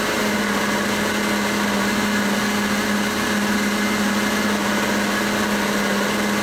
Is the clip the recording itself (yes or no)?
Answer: yes